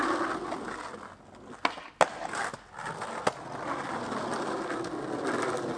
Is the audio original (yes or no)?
yes